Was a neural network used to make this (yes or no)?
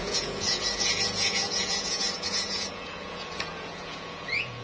yes